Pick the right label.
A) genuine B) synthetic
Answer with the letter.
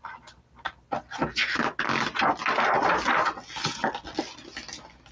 A